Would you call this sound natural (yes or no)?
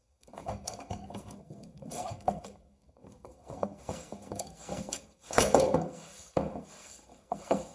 no